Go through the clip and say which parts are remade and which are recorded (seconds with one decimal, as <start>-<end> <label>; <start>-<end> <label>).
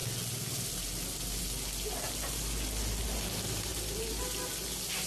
0.0-5.1 recorded